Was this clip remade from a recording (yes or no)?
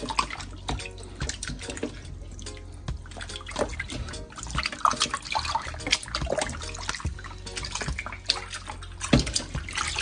no